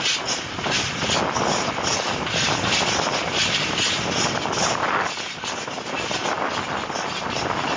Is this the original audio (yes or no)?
yes